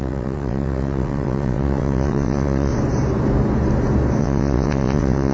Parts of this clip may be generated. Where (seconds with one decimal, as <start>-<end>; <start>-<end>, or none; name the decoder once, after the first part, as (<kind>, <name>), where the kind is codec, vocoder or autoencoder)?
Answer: 0.0-2.7 (vocoder, WaveNeXt); 4.2-5.3